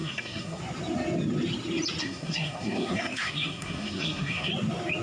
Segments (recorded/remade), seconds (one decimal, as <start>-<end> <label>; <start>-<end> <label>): 0.0-0.6 remade; 0.6-2.0 recorded; 2.0-4.5 remade; 4.5-5.0 recorded